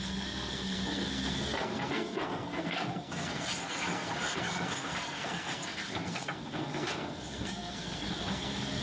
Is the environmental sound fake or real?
fake